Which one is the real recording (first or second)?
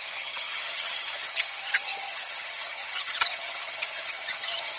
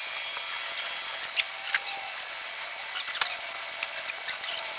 second